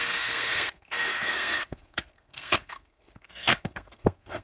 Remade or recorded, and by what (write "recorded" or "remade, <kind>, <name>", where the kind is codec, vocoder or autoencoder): remade, codec, SNAC